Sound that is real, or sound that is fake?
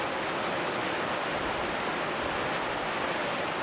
fake